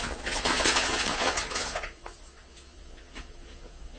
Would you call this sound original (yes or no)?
no